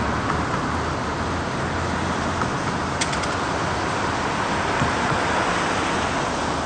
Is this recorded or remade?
recorded